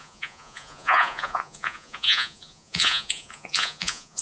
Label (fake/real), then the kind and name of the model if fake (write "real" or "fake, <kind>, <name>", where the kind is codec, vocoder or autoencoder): fake, vocoder, Vocos